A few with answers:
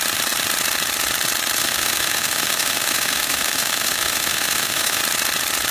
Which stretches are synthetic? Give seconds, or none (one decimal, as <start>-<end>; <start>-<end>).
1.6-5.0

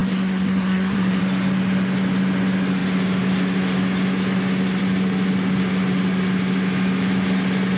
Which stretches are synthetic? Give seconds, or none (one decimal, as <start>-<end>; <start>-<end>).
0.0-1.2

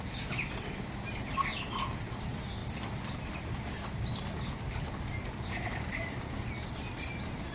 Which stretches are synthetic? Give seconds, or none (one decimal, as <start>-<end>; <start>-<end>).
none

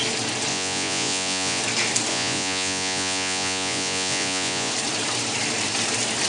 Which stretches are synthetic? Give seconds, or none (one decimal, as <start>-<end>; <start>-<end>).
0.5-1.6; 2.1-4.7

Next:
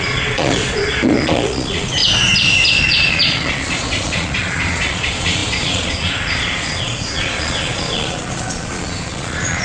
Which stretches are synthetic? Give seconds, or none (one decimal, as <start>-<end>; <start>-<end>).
0.0-2.0; 2.8-9.6